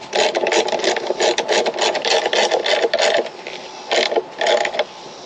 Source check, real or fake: real